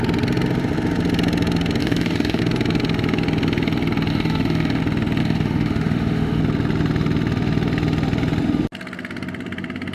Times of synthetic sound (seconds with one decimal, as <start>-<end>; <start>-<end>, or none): 1.8-2.4; 4.1-4.8; 5.2-6.4